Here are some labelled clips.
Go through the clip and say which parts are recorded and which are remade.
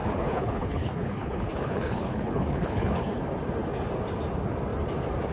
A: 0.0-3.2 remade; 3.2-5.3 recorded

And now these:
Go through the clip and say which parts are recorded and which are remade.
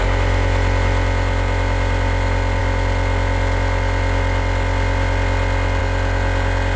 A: 0.0-6.8 recorded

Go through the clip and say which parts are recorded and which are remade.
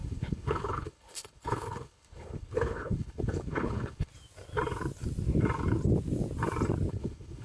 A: 0.0-4.1 remade; 4.1-6.9 recorded; 6.9-7.4 remade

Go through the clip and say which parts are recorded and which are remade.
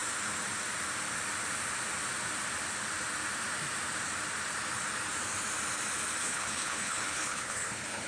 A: 0.0-6.2 recorded; 6.2-8.1 remade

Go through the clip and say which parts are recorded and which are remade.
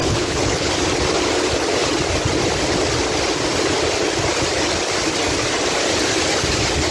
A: 0.0-0.7 remade; 0.7-6.9 recorded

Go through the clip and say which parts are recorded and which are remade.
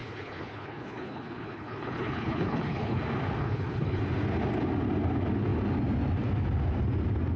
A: 0.0-3.0 remade; 3.0-3.4 recorded; 3.4-4.0 remade; 4.0-7.4 recorded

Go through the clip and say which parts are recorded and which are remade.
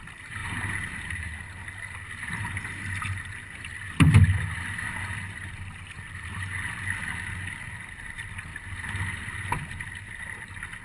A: 0.0-10.8 recorded